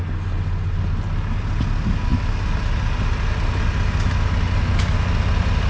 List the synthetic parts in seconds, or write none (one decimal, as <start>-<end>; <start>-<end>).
none